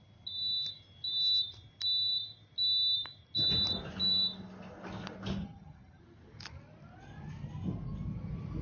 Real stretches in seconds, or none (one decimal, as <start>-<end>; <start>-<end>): 0.0-5.4; 6.0-8.6